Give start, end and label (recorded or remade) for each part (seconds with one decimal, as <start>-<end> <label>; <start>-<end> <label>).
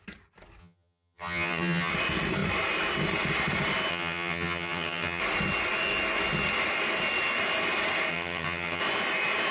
0.0-0.6 recorded; 0.6-1.9 remade; 1.9-3.9 recorded; 3.9-5.2 remade; 5.2-8.1 recorded; 8.1-8.8 remade; 8.8-9.5 recorded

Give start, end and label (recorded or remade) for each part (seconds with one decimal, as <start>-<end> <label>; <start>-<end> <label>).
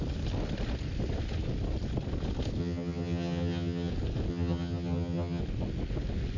0.0-2.6 recorded; 2.6-3.9 remade; 3.9-4.3 recorded; 4.3-5.4 remade; 5.4-6.4 recorded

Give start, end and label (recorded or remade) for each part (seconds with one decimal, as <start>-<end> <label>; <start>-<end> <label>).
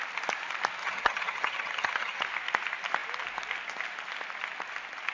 0.0-0.8 recorded; 0.8-2.2 remade; 2.2-5.1 recorded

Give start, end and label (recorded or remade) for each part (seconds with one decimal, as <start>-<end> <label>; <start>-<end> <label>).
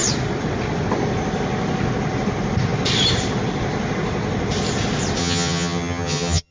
0.0-5.2 recorded; 5.2-6.5 remade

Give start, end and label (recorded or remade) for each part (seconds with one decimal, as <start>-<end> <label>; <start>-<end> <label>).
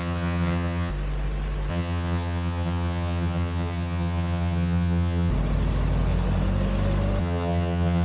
0.0-0.9 remade; 0.9-1.7 recorded; 1.7-5.3 remade; 5.3-7.2 recorded; 7.2-8.0 remade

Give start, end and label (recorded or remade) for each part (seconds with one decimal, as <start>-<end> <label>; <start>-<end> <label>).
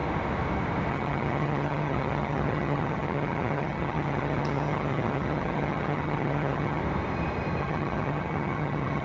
0.0-0.9 recorded; 0.9-6.8 remade; 6.8-7.6 recorded; 7.6-9.0 remade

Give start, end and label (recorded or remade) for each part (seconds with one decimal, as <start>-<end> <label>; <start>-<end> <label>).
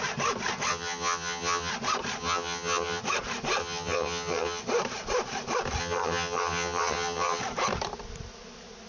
0.0-0.7 recorded; 0.7-1.7 remade; 1.7-2.2 recorded; 2.2-3.0 remade; 3.0-3.6 recorded; 3.6-4.6 remade; 4.6-5.8 recorded; 5.8-7.4 remade; 7.4-8.9 recorded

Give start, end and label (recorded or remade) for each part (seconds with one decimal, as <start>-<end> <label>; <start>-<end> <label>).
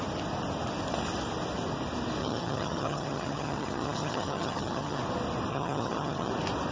0.0-2.2 recorded; 2.2-5.0 remade; 5.0-5.5 recorded; 5.5-6.3 remade; 6.3-6.7 recorded